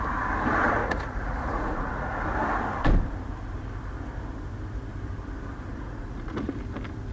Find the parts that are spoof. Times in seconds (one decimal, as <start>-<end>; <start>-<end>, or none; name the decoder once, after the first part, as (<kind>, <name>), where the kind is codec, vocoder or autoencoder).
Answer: 0.8-2.2 (vocoder, Vocos); 5.7-6.5